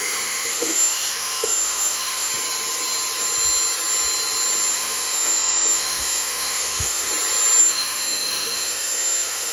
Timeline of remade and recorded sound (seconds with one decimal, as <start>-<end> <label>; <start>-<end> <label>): 0.0-2.3 remade; 2.3-4.7 recorded; 4.7-7.1 remade; 7.1-7.6 recorded; 7.6-9.5 remade